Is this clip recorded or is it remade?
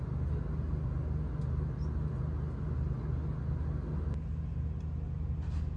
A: recorded